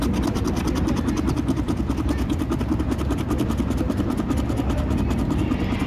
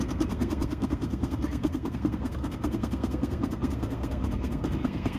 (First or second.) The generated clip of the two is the second